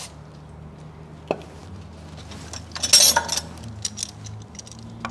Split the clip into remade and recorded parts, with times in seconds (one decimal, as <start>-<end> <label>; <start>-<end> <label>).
0.0-5.1 recorded